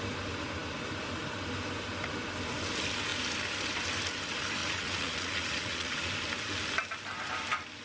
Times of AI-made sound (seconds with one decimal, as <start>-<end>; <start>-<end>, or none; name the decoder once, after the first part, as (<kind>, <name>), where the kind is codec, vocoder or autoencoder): 4.6-6.1 (vocoder, Vocos)